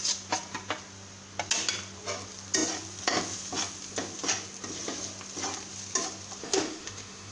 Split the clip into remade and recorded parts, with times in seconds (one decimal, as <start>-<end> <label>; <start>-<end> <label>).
0.0-6.4 recorded; 6.4-7.3 remade